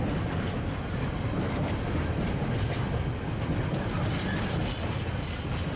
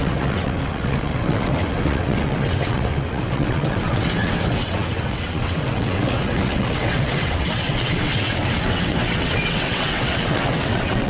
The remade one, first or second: second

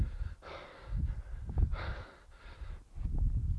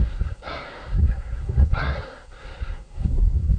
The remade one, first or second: second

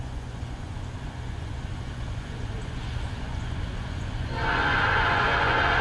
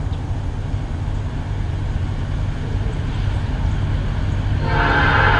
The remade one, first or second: first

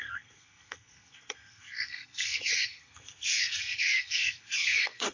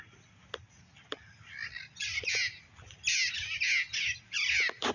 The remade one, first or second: first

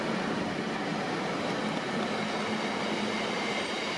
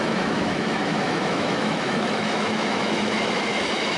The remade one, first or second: second